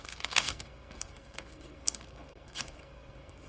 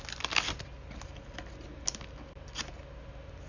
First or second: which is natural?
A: second